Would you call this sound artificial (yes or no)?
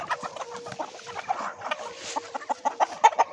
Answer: no